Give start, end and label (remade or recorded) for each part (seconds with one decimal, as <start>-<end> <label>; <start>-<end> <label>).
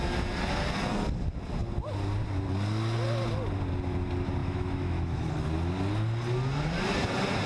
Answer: 0.0-4.4 recorded; 4.4-5.3 remade; 5.3-7.5 recorded